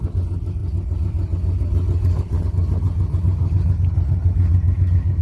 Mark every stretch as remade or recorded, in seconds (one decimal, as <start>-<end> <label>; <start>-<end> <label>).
0.0-5.2 recorded